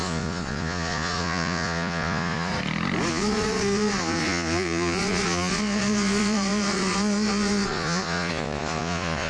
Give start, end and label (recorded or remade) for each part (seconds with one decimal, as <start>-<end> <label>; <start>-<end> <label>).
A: 0.0-2.5 remade; 2.5-3.1 recorded; 3.1-9.3 remade